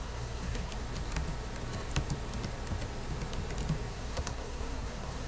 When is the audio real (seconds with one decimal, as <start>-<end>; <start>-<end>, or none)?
0.7-3.9